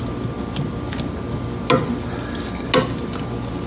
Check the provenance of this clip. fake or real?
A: real